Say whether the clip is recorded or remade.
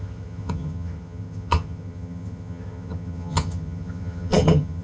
remade